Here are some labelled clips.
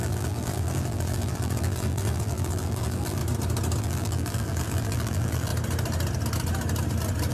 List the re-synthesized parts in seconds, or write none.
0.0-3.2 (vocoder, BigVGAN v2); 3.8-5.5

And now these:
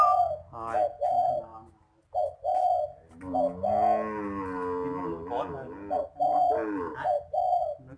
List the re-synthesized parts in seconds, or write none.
none

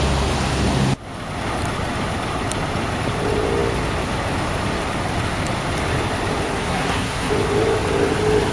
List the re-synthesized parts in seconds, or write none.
6.5-7.3 (codec, SNAC)